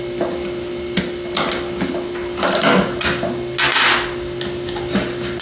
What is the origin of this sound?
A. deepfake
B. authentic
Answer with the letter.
B